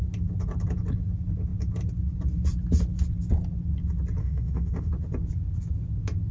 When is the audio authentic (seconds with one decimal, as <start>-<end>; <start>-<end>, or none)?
0.0-4.2; 4.9-6.3